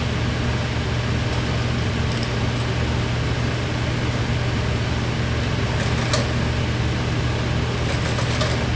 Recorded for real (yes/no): yes